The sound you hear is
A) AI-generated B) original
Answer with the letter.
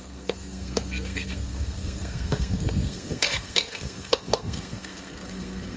A